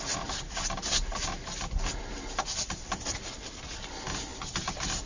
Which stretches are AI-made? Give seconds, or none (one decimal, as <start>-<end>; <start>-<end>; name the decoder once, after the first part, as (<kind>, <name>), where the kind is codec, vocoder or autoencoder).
none